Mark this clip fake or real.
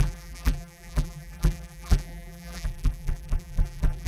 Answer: fake